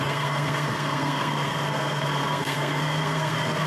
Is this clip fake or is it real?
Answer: fake